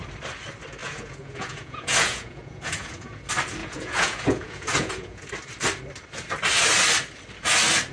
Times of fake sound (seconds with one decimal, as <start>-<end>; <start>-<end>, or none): 0.8-3.2; 3.6-5.3